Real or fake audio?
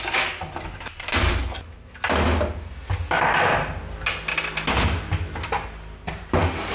real